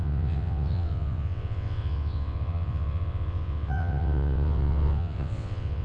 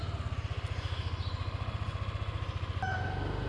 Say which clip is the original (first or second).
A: second